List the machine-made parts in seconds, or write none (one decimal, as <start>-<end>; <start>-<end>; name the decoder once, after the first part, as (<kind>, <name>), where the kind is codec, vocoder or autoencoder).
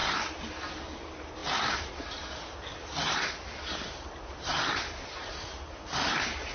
none